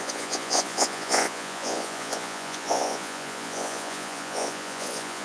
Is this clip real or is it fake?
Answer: fake